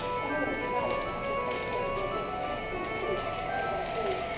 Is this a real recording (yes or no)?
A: yes